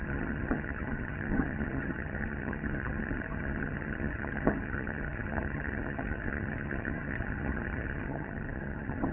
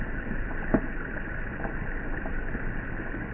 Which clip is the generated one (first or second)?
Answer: first